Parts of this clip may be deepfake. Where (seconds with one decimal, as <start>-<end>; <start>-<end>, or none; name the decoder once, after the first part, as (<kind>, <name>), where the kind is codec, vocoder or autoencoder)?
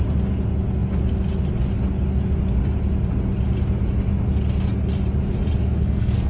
5.6-6.3 (codec, SNAC)